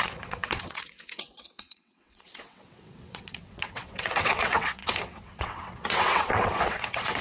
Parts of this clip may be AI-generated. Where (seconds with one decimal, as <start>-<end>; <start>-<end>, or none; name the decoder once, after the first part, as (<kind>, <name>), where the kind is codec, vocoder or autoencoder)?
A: 0.0-7.2 (vocoder, WaveNeXt)